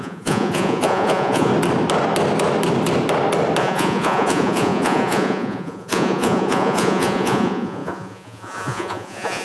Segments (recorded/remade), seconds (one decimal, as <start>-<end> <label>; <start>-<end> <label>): 0.0-1.5 remade; 1.5-3.6 recorded; 3.6-9.4 remade